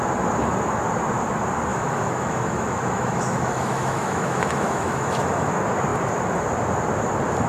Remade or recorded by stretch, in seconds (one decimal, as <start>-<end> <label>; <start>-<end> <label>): 0.0-1.7 recorded; 1.7-5.5 remade; 5.5-7.5 recorded